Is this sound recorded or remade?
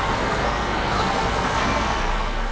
remade